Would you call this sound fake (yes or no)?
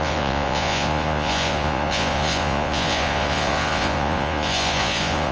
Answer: yes